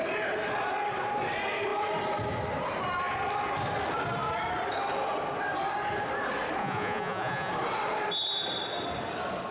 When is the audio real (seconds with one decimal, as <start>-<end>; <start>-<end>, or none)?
0.0-6.6; 7.5-9.5